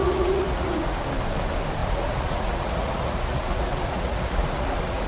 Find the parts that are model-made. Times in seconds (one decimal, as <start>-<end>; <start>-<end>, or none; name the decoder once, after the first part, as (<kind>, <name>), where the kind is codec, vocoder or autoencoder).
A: 0.0-1.0 (vocoder, Vocos); 1.8-5.1